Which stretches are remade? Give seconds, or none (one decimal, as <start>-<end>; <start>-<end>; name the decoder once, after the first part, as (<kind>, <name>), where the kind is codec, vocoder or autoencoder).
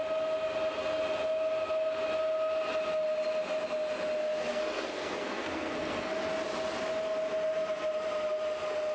4.2-6.1 (codec, SNAC)